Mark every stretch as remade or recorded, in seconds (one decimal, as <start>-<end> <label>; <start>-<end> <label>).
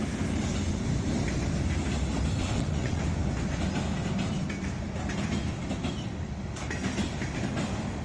0.0-2.4 recorded; 2.4-3.0 remade; 3.0-8.0 recorded